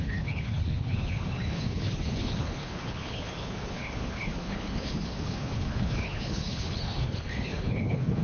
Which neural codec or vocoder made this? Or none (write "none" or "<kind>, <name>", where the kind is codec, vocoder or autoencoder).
codec, HILCodec